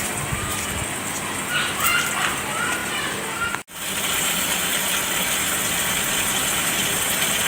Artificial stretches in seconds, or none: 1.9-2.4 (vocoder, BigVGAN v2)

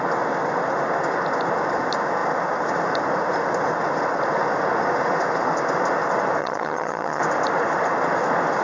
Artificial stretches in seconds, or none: 6.4-7.2 (vocoder, HiFi-GAN)

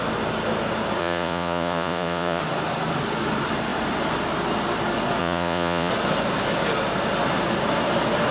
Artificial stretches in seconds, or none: 1.0-2.4 (vocoder, Vocos); 5.2-5.9

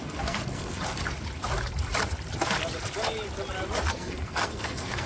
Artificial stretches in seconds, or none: 0.0-0.8 (codec, SNAC); 3.9-5.1